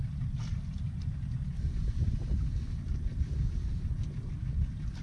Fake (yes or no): no